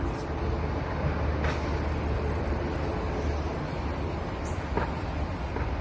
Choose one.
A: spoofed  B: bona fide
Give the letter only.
B